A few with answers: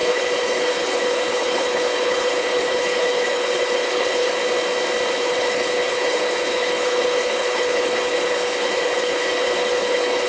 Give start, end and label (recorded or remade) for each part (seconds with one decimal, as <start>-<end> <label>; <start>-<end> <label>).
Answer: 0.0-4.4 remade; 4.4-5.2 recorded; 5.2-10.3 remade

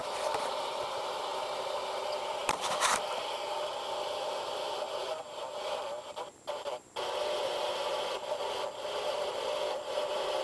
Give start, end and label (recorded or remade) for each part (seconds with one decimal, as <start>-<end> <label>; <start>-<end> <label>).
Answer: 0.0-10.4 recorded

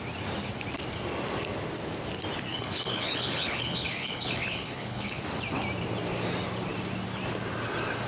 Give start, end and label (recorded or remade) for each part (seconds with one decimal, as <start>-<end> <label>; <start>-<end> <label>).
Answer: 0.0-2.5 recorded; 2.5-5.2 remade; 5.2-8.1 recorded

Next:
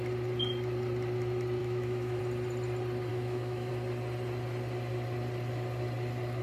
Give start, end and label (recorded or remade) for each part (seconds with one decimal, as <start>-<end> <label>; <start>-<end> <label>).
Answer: 0.0-1.6 recorded; 1.6-2.2 remade; 2.2-3.1 recorded; 3.1-3.7 remade; 3.7-6.4 recorded

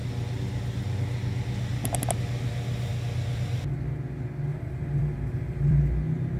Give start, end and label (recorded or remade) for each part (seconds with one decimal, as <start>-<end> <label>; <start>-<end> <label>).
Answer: 0.0-4.5 recorded; 4.5-5.8 remade; 5.8-6.4 recorded

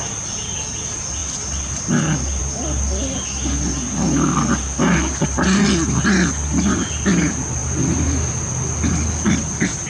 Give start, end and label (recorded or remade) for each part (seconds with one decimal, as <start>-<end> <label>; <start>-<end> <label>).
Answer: 0.0-9.9 recorded